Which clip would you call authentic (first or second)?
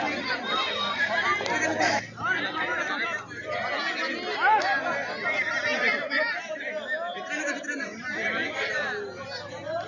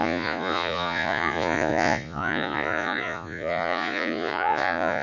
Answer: first